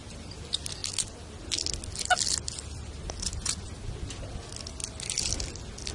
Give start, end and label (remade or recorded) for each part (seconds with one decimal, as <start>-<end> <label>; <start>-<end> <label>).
0.0-5.9 recorded